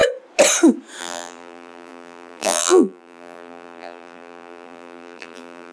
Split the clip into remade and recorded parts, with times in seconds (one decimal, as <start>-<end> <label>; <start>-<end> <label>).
0.0-1.0 recorded; 1.0-5.7 remade